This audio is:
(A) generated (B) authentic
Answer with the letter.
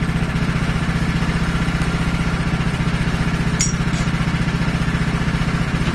B